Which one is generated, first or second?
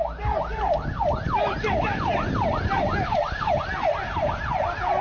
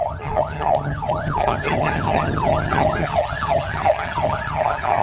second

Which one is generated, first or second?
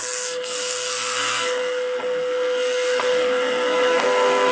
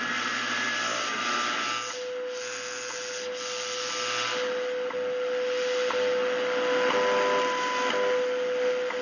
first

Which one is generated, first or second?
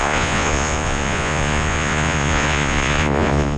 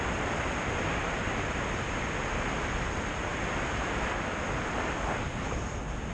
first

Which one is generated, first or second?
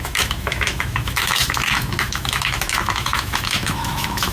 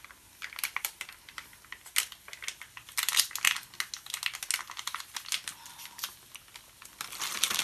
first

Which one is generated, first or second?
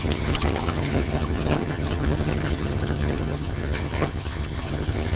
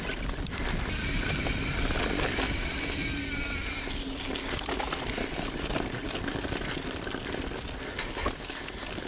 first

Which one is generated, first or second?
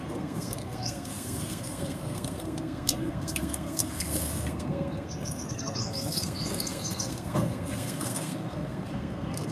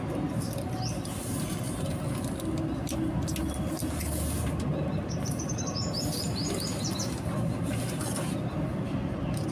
first